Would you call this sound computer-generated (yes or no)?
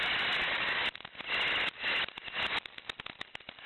no